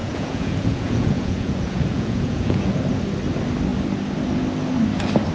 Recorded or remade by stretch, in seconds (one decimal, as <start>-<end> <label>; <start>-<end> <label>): 0.0-2.8 remade; 2.8-5.3 recorded